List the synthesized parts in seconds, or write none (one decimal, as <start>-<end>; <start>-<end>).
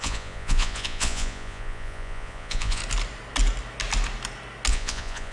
0.0-2.8; 4.7-5.3